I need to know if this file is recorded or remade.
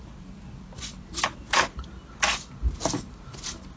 recorded